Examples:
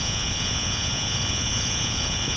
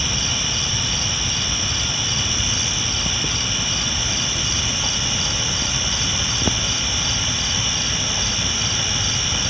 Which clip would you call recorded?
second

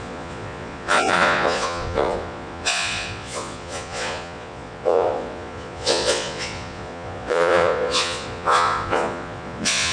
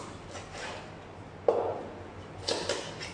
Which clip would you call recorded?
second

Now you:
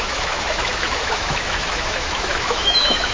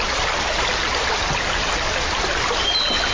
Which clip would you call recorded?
second